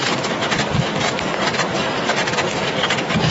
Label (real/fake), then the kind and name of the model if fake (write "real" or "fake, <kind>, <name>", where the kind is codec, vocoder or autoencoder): real